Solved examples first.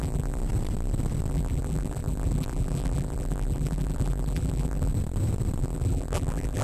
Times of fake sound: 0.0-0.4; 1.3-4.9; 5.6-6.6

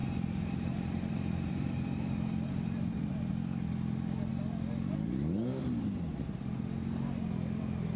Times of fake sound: 0.0-3.3

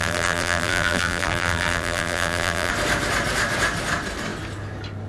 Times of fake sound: 0.0-2.7

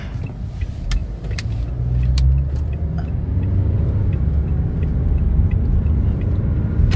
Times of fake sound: none

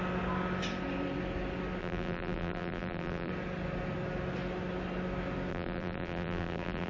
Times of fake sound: 1.8-3.3; 5.5-6.9

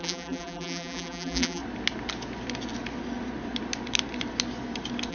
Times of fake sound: 0.0-1.6

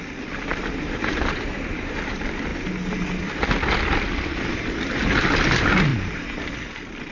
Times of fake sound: 0.5-2.1; 5.9-6.4

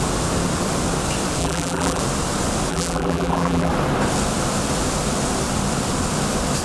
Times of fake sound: 1.4-2.0; 2.7-3.7